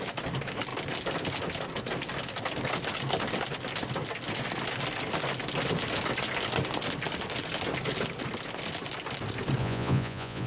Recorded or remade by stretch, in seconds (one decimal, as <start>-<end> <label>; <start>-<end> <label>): 0.0-9.6 recorded; 9.6-10.5 remade